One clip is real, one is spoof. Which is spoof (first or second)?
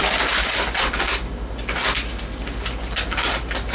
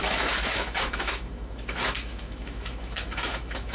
second